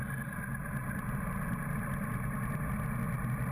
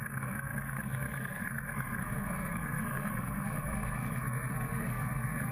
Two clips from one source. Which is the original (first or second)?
first